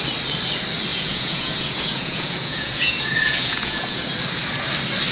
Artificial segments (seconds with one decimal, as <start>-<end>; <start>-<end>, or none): 0.9-4.0

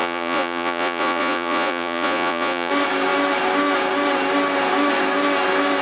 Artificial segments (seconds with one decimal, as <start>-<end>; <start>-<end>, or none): 0.0-2.7